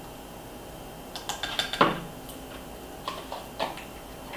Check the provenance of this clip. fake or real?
real